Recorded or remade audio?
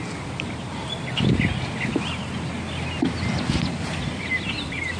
recorded